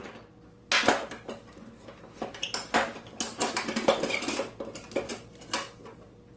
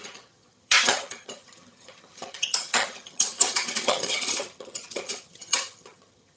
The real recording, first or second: first